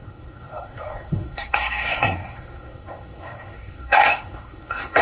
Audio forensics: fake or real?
fake